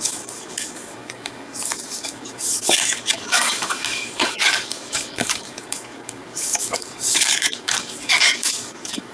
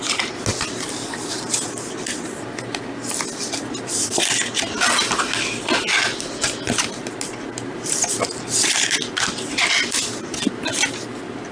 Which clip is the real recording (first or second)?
second